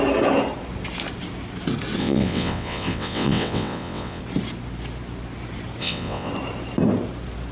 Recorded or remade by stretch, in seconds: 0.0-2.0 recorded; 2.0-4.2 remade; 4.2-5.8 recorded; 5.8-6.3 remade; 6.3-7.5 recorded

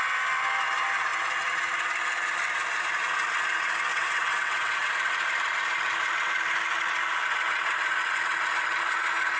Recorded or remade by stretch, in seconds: 0.0-3.9 recorded; 3.9-4.9 remade; 4.9-9.4 recorded

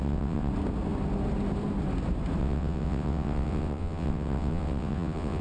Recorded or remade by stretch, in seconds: 0.0-0.5 remade; 0.5-2.4 recorded; 2.4-5.4 remade